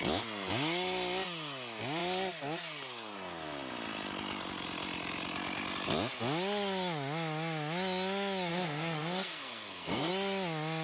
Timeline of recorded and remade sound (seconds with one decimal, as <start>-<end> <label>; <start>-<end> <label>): 0.0-8.5 recorded; 8.5-10.1 remade; 10.1-10.8 recorded